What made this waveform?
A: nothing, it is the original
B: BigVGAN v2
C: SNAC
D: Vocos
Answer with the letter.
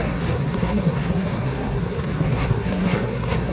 C